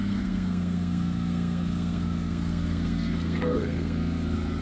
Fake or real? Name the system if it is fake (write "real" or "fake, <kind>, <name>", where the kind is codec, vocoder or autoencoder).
fake, codec, SNAC